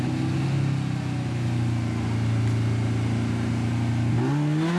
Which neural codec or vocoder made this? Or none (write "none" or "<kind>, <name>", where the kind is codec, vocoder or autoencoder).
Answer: none